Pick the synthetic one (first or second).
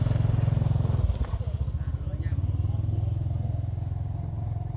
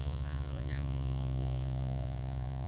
second